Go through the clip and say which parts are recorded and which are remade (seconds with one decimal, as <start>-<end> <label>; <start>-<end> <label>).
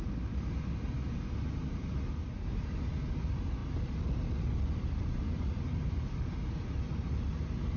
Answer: 0.0-7.8 recorded